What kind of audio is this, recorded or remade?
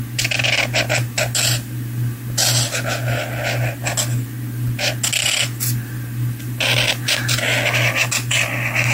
recorded